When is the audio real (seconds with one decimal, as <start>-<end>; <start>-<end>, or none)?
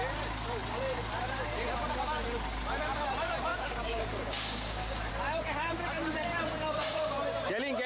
0.0-3.5; 5.1-7.9